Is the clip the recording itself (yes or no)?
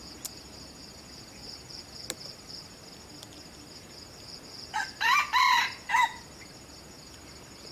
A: yes